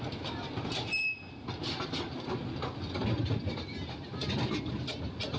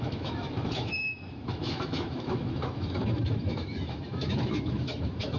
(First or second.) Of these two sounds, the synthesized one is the second